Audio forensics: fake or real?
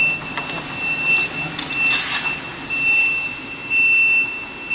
real